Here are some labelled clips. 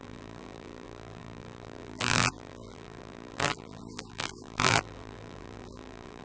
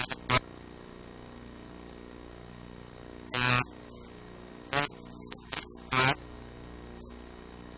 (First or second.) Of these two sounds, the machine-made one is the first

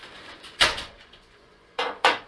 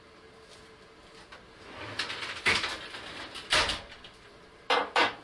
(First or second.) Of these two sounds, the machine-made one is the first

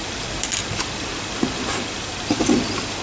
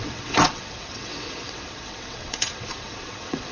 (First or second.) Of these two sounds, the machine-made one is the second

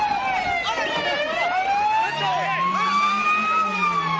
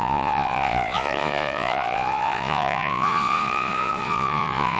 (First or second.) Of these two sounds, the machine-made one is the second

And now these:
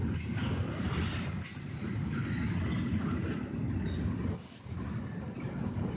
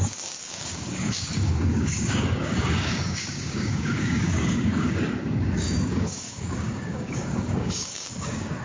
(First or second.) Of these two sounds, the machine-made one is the second